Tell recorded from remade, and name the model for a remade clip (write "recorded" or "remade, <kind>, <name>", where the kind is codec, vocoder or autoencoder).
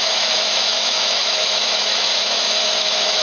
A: remade, autoencoder, DAC-VAE